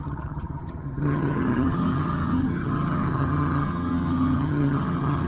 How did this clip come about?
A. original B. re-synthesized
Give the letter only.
B